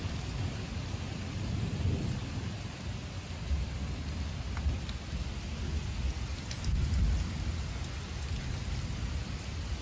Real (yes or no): yes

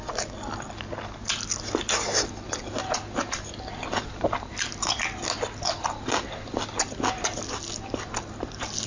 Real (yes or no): yes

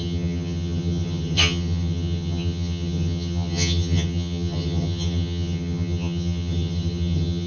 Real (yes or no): no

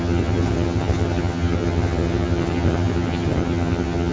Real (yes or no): no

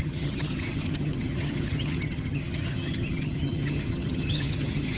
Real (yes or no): no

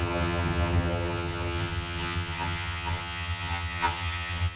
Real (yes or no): no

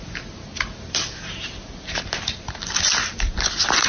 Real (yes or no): yes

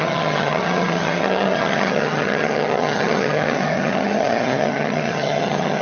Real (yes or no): no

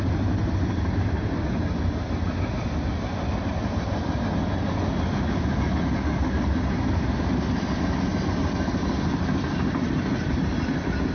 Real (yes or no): yes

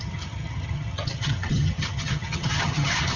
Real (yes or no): no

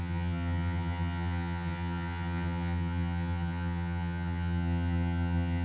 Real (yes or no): no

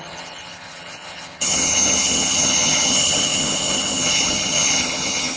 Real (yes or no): no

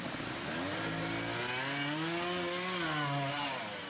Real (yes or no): yes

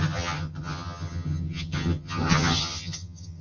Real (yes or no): no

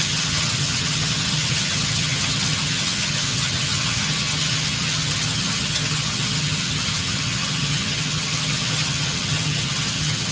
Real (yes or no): no